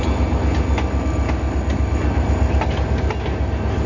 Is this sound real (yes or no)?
yes